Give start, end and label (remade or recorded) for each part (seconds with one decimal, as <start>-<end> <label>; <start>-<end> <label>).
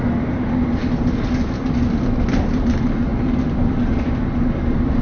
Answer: 0.0-5.0 recorded